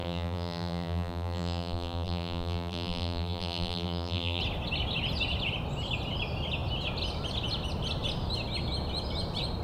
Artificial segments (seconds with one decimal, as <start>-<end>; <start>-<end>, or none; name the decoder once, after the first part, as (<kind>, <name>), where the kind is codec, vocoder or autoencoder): 0.0-4.4 (vocoder, BigVGAN v2)